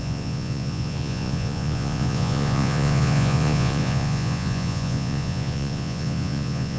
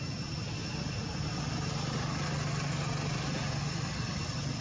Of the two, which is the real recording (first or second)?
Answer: second